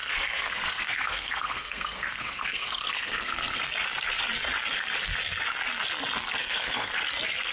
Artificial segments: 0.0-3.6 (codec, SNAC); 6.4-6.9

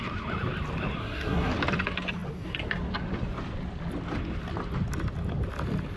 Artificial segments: 1.0-1.5 (codec, SNAC)

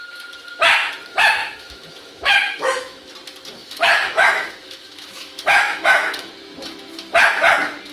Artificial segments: 1.1-3.1 (autoencoder, DAC-VAE); 3.6-6.3

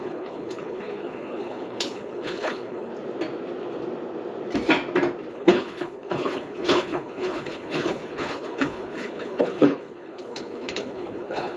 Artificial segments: 0.0-2.9 (codec, HILCodec); 5.3-11.6

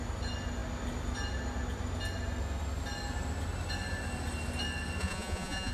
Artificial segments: 5.0-5.7 (vocoder, Vocos)

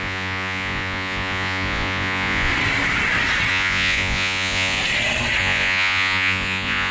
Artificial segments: 0.0-2.5 (vocoder, Vocos); 3.5-4.8; 5.4-6.9

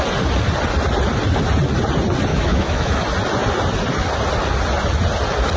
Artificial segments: 2.3-3.0 (autoencoder, DAC-VAE)

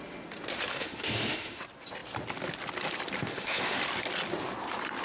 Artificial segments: 0.7-1.6 (autoencoder, DAC-VAE); 3.2-3.8